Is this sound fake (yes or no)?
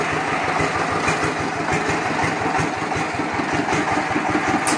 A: no